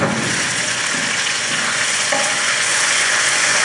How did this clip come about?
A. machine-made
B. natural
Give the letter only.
A